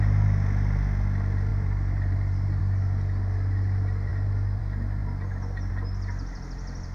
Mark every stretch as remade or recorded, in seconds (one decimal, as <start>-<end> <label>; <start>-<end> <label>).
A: 0.0-1.5 recorded; 1.5-2.6 remade; 2.6-6.9 recorded